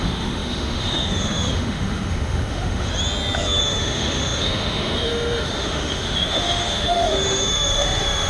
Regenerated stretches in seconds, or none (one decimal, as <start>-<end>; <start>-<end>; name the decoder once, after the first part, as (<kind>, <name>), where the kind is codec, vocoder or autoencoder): 0.0-2.9 (autoencoder, DAC-VAE); 3.6-8.3